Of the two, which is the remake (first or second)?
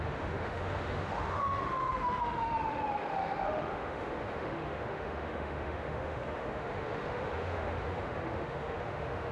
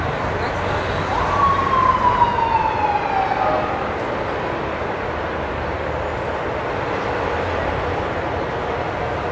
first